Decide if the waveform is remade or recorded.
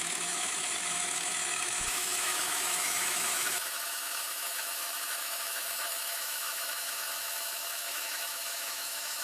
remade